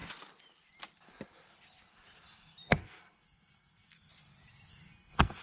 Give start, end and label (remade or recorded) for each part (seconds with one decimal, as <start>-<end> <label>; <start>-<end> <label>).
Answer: 0.0-2.8 recorded; 2.8-4.1 remade; 4.1-4.7 recorded; 4.7-5.4 remade